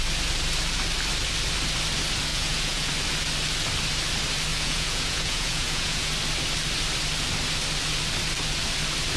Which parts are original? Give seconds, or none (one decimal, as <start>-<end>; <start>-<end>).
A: 0.0-2.3; 2.9-4.5; 6.1-9.2